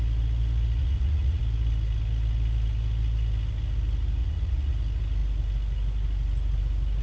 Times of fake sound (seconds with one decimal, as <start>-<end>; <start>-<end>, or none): 0.8-1.4; 4.2-4.7